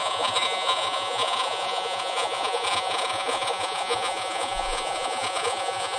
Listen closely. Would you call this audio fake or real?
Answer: fake